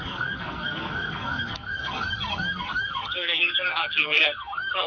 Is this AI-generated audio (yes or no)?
yes